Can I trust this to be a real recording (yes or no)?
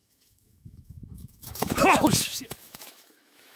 no